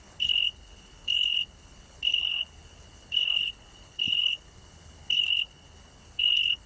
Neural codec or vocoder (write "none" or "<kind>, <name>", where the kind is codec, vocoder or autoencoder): codec, HILCodec